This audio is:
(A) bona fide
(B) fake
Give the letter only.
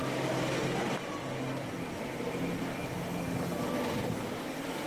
A